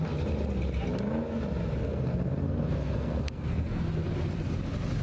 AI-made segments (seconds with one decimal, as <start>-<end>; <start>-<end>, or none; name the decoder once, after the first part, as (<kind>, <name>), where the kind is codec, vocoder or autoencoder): 1.8-3.8 (codec, SNAC)